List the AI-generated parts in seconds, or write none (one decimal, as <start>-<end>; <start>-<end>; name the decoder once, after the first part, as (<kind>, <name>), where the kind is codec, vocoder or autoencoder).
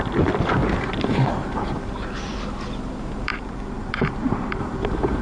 0.0-0.6 (vocoder, BigVGAN v2); 2.9-5.2